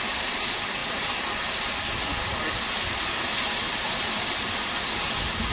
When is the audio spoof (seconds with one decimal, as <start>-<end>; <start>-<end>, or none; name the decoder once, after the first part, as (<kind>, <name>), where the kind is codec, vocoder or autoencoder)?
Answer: none